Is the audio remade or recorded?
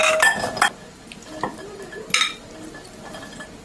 recorded